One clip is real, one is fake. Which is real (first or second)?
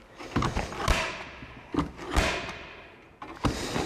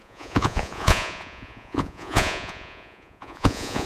first